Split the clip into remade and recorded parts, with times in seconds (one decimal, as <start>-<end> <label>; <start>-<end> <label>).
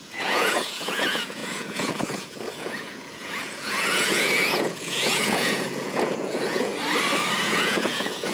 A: 0.0-6.7 remade; 6.7-7.4 recorded; 7.4-8.3 remade